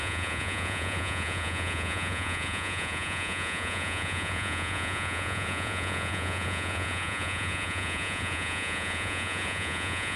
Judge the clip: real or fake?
fake